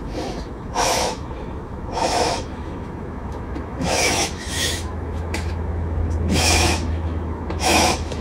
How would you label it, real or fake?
fake